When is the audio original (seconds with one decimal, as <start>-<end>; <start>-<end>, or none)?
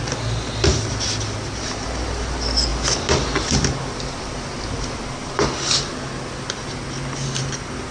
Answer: 0.0-7.9